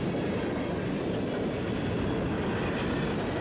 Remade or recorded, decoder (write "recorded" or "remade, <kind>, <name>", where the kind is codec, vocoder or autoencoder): recorded